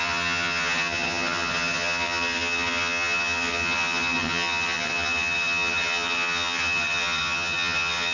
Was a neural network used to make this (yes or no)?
yes